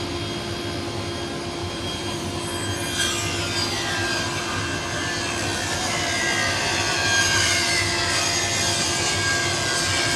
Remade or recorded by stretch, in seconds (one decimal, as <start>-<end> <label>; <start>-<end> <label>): 0.0-1.6 recorded; 1.6-2.4 remade; 2.4-10.2 recorded